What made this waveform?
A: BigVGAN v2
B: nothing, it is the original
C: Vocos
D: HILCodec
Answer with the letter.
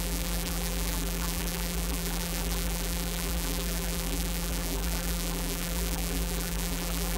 A